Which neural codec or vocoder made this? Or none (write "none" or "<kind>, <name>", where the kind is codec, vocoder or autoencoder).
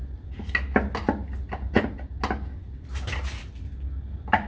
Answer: none